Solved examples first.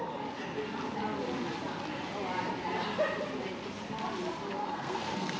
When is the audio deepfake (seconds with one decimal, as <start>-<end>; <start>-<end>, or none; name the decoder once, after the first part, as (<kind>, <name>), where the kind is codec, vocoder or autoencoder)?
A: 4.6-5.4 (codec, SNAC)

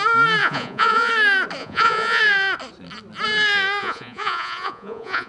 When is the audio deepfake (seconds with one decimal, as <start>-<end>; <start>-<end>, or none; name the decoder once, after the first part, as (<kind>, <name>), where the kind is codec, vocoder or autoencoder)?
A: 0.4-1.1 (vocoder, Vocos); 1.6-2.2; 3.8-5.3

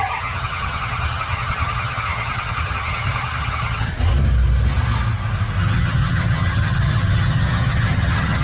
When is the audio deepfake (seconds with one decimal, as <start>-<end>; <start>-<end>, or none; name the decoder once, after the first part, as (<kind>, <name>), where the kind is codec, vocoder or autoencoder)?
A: 0.0-3.9 (vocoder, HiFi-GAN); 5.6-8.4

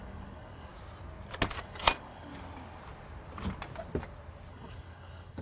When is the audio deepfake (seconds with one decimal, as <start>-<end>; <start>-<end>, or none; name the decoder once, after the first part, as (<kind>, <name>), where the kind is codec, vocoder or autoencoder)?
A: 0.0-0.7 (codec, DAC); 1.6-2.3; 4.5-5.4

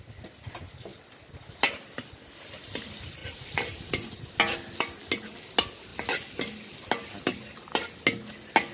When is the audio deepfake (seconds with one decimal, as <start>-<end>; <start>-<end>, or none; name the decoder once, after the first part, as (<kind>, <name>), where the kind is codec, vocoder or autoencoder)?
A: 3.2-4.2 (vocoder, BigVGAN v2)